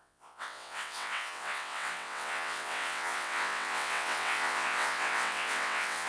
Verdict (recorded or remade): remade